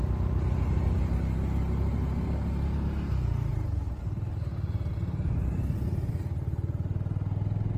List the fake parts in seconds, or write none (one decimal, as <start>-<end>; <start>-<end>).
3.5-4.4